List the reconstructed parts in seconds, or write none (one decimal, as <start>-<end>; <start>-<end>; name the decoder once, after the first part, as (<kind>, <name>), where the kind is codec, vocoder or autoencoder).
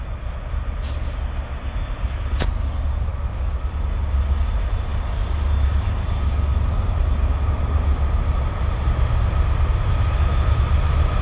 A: 3.1-3.7 (codec, DAC)